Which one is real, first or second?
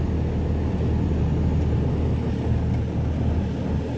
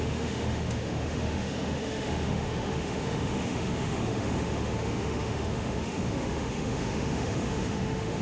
first